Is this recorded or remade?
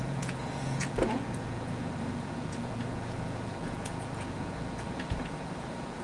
remade